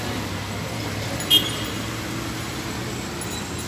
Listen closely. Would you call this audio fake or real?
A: real